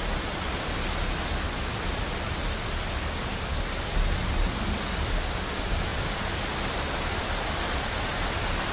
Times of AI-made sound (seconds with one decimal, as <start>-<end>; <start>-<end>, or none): none